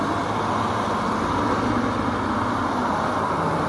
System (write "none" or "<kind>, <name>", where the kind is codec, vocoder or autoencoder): none